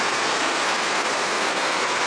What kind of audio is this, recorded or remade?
remade